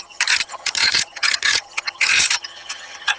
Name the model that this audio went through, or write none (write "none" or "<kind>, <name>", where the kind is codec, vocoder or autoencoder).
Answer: vocoder, HiFi-GAN